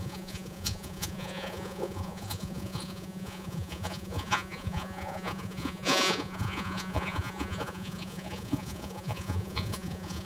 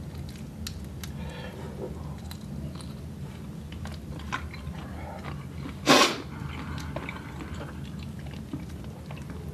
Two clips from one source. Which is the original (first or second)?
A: second